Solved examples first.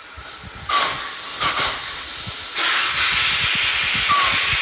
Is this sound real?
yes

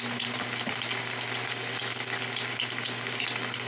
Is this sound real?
yes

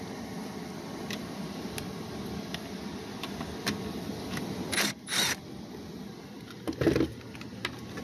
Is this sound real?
yes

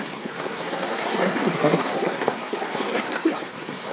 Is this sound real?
no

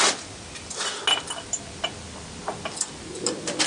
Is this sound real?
yes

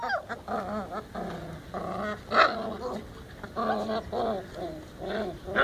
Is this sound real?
yes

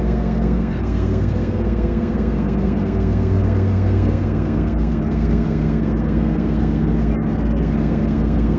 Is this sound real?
no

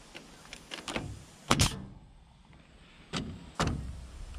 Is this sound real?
yes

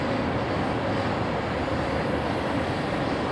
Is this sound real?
yes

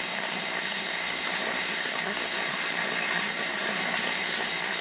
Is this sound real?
no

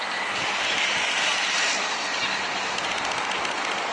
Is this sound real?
yes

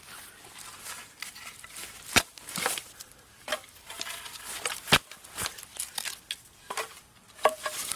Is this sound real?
yes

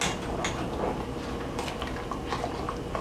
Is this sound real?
yes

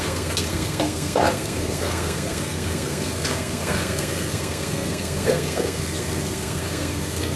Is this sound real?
no